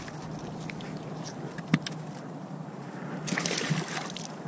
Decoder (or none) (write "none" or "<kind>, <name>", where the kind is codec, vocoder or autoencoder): none